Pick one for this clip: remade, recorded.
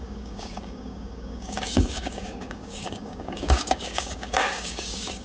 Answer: remade